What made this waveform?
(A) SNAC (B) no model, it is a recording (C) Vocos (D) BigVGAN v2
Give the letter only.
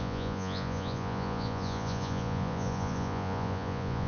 C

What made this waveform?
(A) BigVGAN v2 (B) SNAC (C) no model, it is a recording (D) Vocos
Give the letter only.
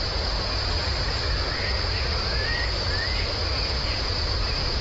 D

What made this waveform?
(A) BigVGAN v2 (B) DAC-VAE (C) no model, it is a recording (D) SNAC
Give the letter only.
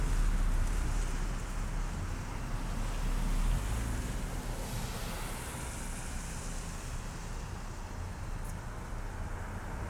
C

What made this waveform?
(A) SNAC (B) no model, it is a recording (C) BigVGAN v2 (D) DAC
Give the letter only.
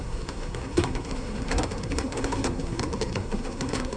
A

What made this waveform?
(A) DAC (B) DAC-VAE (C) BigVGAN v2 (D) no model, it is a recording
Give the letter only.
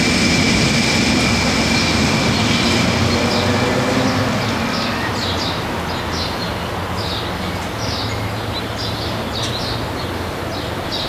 D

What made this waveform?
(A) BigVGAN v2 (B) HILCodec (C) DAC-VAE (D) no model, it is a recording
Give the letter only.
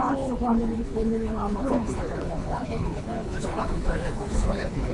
B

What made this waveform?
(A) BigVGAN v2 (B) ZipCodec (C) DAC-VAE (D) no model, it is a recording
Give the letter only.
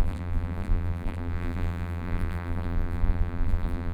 A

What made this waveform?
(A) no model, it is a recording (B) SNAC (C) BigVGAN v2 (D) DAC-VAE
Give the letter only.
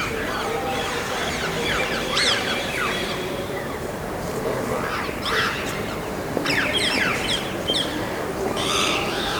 C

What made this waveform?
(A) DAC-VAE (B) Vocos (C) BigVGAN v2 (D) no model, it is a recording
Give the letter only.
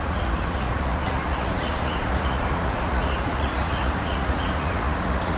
B